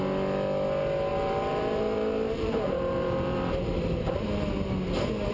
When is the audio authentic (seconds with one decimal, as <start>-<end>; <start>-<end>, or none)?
0.0-1.1; 4.2-5.3